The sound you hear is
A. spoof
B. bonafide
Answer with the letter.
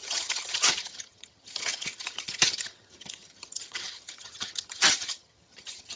A